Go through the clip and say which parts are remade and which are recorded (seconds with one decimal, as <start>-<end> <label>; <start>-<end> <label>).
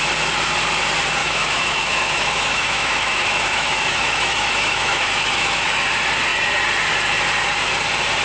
0.0-1.2 recorded; 1.2-5.7 remade; 5.7-8.2 recorded